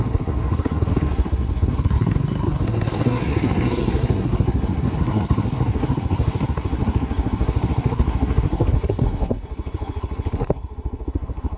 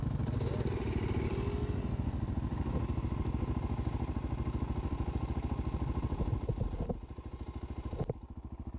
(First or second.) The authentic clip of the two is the second